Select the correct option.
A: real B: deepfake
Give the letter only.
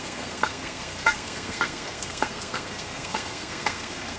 B